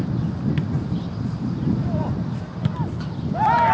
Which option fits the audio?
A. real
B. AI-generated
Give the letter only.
A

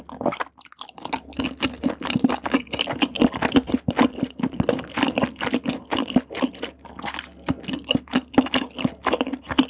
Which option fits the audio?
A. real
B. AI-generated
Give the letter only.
A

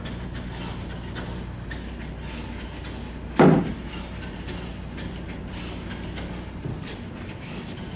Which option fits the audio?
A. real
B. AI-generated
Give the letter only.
A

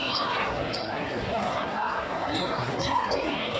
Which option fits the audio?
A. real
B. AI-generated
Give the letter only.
B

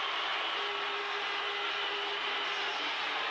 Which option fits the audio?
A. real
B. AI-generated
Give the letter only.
A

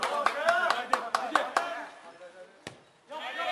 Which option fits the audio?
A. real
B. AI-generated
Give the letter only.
A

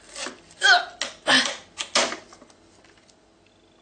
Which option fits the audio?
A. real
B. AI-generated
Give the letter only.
A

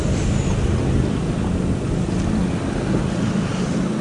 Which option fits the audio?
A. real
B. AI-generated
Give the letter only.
A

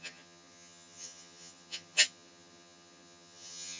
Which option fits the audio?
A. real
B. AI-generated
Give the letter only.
B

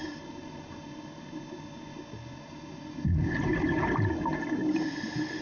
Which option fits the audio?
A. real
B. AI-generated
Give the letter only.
A